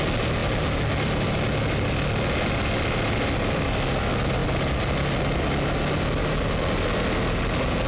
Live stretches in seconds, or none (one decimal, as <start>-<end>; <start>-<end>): 0.0-7.9